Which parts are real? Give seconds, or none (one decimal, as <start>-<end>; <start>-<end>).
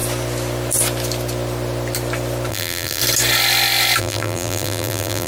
0.0-2.5; 3.0-4.0